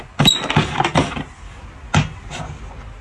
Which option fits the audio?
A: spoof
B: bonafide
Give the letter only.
B